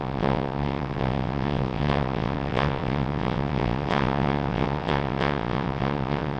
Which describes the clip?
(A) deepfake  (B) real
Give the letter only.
A